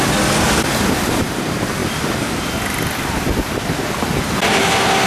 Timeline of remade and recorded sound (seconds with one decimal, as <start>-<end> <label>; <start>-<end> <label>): 0.0-5.1 recorded